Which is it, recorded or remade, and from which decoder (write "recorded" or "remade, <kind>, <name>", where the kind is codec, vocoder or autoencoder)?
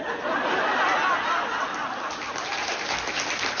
recorded